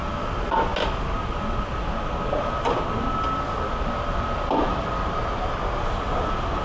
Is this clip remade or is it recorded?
recorded